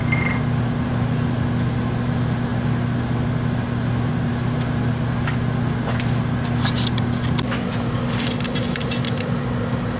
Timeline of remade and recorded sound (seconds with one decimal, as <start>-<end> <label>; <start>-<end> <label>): 0.0-10.0 recorded